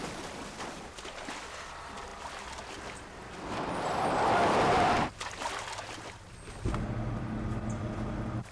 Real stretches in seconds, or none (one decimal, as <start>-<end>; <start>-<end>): 0.0-8.5